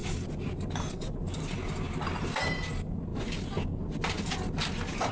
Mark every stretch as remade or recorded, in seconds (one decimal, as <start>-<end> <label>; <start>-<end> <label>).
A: 0.0-5.1 recorded